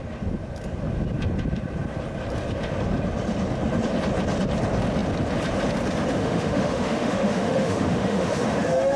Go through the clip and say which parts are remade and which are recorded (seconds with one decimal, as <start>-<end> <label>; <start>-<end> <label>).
0.0-6.2 recorded; 6.2-9.0 remade